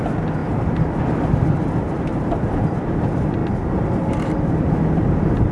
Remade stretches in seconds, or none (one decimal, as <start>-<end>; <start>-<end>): 0.4-1.0; 2.1-2.8; 3.4-4.6